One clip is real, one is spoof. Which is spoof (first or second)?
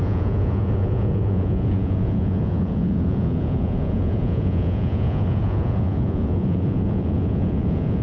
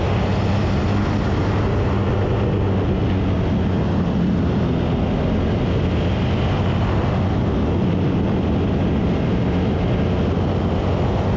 first